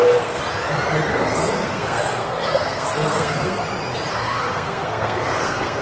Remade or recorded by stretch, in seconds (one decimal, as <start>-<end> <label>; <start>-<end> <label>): 0.0-0.4 remade; 0.4-1.1 recorded; 1.1-3.6 remade; 3.6-4.1 recorded; 4.1-5.8 remade

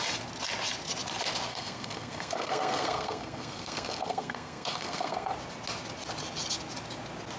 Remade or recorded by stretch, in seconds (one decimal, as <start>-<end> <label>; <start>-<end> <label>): 0.0-1.5 recorded; 1.5-5.3 remade; 5.3-7.4 recorded

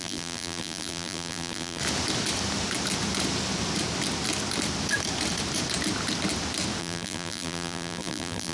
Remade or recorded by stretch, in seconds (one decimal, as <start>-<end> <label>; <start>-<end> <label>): 0.0-1.8 remade; 1.8-6.8 recorded; 6.8-8.5 remade

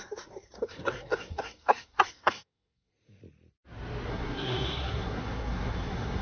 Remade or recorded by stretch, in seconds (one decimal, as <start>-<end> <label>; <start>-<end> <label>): 0.0-2.9 remade; 2.9-4.1 recorded; 4.1-6.2 remade